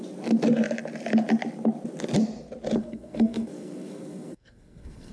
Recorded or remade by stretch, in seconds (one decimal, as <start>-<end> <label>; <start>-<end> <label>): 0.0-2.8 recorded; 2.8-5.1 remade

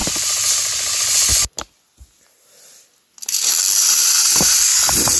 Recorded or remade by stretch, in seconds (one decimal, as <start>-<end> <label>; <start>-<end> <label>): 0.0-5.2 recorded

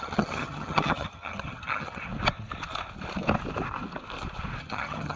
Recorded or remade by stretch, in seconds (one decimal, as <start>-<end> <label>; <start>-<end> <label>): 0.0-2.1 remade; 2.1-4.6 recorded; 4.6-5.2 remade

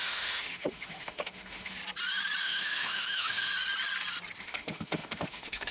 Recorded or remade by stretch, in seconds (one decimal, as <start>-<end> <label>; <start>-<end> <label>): 0.0-1.8 remade; 1.8-2.4 recorded; 2.4-3.5 remade; 3.5-4.4 recorded; 4.4-5.7 remade

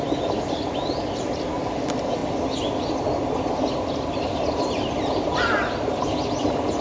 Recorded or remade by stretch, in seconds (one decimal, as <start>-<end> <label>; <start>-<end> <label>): 0.0-6.8 recorded

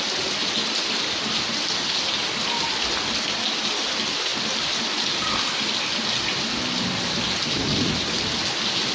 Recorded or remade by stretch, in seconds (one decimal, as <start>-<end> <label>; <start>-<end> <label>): 0.0-8.9 recorded

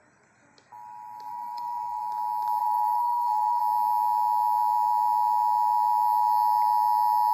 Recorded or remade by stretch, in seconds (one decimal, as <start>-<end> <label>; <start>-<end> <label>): 0.0-1.3 recorded; 1.3-2.0 remade; 2.0-2.6 recorded; 2.6-3.6 remade; 3.6-7.3 recorded